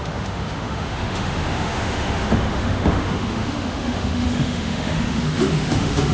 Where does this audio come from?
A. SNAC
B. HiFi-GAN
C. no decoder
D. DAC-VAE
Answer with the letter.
D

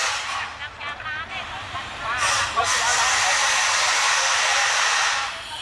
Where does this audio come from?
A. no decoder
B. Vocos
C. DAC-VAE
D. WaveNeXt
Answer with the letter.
A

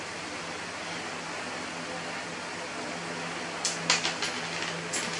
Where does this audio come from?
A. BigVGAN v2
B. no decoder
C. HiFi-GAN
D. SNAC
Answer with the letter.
B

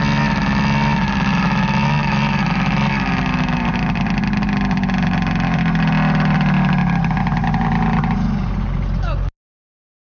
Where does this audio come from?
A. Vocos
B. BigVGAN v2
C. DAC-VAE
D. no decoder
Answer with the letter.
D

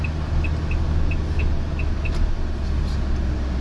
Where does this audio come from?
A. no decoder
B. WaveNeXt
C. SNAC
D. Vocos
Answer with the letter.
A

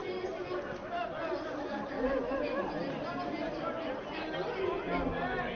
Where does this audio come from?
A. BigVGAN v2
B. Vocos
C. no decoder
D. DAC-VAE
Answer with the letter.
C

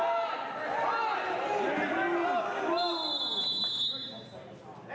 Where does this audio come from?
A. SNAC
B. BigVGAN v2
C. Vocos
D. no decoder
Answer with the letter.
D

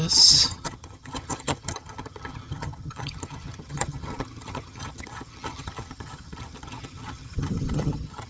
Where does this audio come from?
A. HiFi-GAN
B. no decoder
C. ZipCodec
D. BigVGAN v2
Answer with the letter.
A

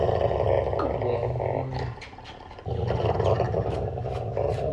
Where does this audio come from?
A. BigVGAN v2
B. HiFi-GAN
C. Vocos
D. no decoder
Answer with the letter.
D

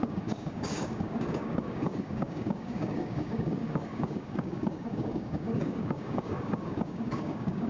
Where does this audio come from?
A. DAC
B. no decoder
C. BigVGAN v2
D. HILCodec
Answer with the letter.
A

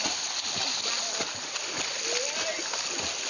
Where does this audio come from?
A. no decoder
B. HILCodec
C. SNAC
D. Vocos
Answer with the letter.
A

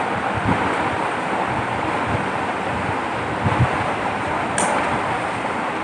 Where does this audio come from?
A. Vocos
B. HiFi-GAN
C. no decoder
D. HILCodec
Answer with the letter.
C